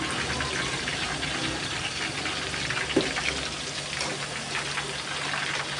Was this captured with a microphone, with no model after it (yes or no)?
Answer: yes